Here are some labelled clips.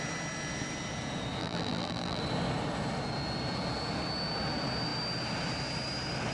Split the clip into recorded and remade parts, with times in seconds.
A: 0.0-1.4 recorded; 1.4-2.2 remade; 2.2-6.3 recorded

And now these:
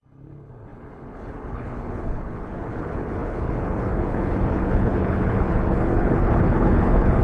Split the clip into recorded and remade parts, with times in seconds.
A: 0.0-7.2 remade

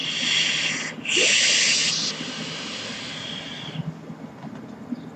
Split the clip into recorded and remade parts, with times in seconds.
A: 0.0-5.2 recorded

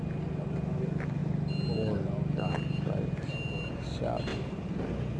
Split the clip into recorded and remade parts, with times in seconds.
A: 0.0-5.2 recorded

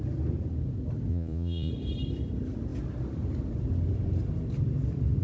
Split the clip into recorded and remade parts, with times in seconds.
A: 0.0-1.1 recorded; 1.1-1.7 remade; 1.7-5.2 recorded

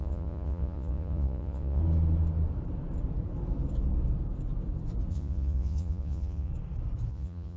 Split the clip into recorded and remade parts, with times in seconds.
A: 0.0-1.8 remade; 1.8-5.1 recorded; 5.1-6.5 remade; 6.5-7.1 recorded; 7.1-7.6 remade

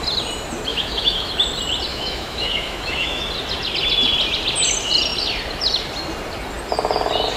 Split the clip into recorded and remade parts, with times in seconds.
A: 0.0-0.7 recorded; 0.7-1.3 remade; 1.3-1.9 recorded; 1.9-3.2 remade; 3.2-7.4 recorded